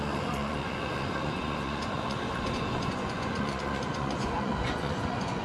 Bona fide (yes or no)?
no